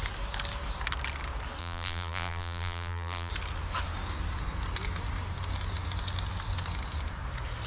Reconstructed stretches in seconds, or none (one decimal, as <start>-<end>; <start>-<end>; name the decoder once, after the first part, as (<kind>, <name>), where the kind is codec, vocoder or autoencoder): 1.6-3.3 (vocoder, BigVGAN v2)